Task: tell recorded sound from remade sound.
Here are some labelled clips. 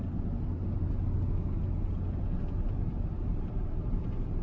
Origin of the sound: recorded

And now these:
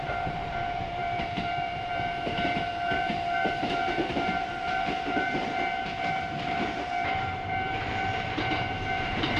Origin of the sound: remade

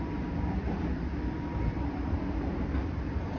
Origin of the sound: remade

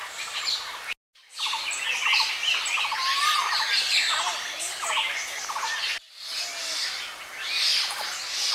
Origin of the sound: recorded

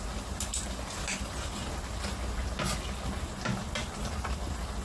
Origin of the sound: recorded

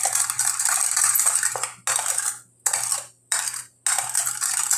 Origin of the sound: recorded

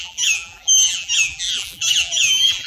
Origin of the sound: remade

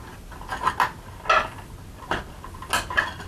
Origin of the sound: recorded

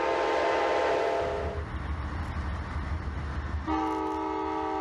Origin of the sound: recorded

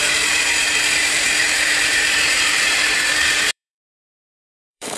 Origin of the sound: remade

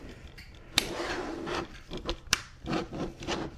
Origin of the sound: remade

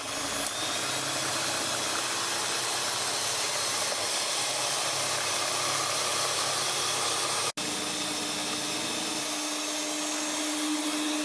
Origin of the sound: recorded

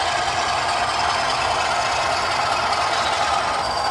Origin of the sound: recorded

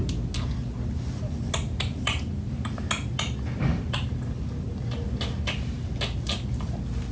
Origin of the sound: recorded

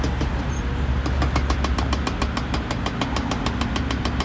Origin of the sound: recorded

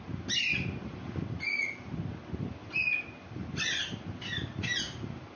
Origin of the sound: recorded